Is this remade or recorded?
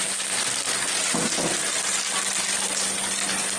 recorded